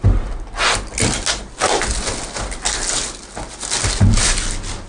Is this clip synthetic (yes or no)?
no